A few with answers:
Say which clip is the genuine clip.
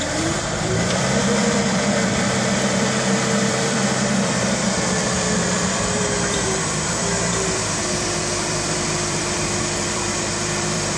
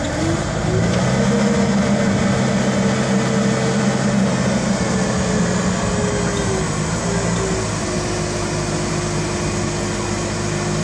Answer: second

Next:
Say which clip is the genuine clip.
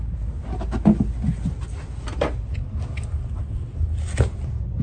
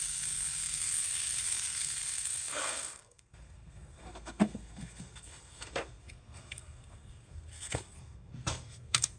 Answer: first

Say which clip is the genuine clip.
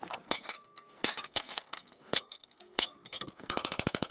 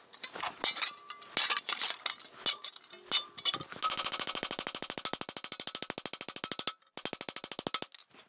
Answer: second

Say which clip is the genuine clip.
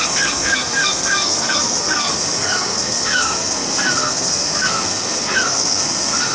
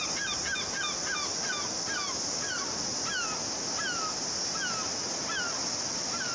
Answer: second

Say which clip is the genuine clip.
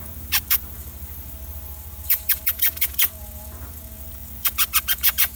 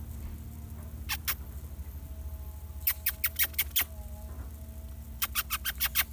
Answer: second